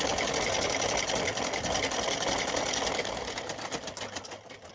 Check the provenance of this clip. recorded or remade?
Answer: recorded